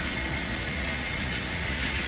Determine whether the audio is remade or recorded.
remade